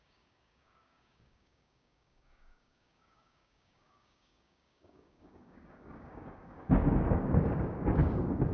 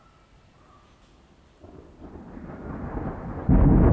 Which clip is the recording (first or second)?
second